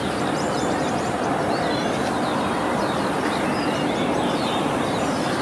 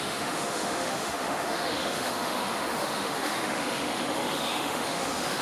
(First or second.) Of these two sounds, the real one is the first